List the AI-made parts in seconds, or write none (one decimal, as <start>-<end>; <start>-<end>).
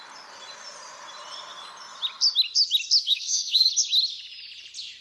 3.0-3.7